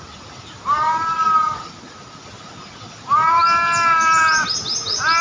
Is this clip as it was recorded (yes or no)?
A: yes